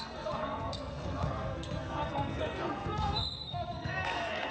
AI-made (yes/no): yes